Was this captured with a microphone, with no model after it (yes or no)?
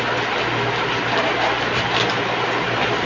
yes